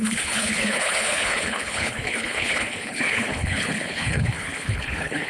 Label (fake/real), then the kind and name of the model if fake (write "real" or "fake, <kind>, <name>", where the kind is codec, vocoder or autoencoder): fake, codec, HILCodec